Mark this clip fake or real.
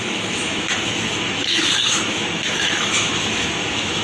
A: fake